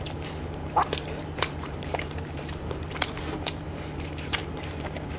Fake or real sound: fake